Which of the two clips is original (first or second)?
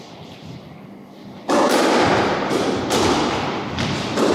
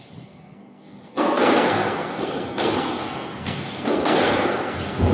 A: first